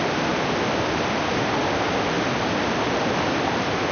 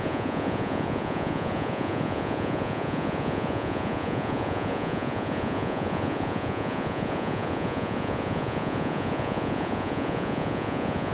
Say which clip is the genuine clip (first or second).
first